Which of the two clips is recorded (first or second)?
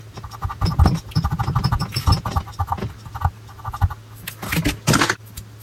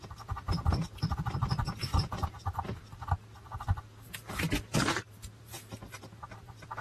first